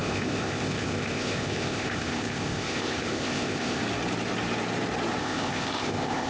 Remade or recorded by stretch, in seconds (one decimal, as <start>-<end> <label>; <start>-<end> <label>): 0.0-3.8 remade; 3.8-5.2 recorded; 5.2-6.3 remade